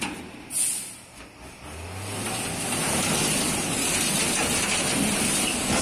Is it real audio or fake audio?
real